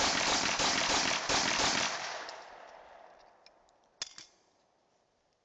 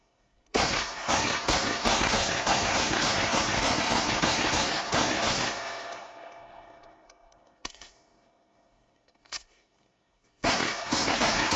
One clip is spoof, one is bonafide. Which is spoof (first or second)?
second